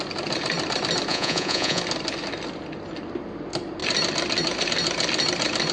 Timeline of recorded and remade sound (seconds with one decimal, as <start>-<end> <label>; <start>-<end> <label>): 0.0-1.1 recorded; 1.1-1.8 remade; 1.8-5.7 recorded